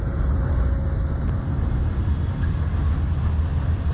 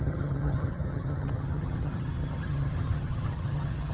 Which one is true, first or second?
first